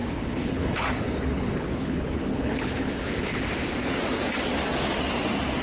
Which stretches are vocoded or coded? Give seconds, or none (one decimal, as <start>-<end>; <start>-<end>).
0.0-3.4